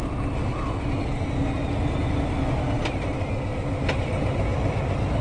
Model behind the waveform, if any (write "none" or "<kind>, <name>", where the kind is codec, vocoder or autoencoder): none